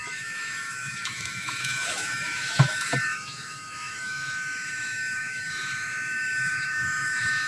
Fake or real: fake